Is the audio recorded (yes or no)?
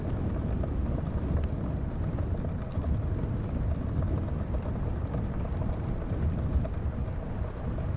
yes